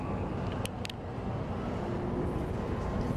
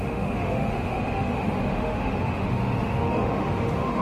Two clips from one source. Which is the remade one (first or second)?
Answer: second